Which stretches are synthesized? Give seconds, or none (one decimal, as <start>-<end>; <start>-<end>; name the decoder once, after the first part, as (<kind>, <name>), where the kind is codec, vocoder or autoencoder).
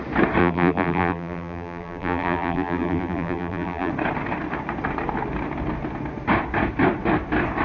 0.4-3.9 (vocoder, BigVGAN v2)